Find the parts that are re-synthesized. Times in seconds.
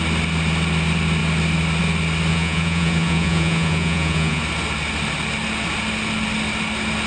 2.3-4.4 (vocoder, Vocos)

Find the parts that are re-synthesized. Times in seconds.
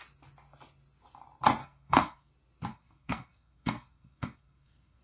1.6-2.3 (codec, SNAC); 2.7-5.0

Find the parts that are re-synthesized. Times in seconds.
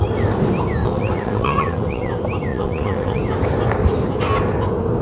0.8-2.1 (vocoder, WaveNeXt); 2.5-3.2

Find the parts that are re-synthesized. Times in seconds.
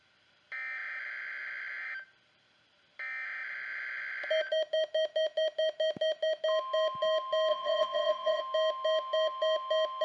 7.5-8.4 (vocoder, WaveNeXt)